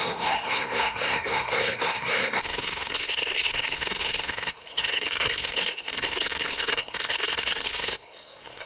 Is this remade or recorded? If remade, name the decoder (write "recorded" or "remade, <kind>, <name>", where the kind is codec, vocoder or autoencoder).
remade, codec, SNAC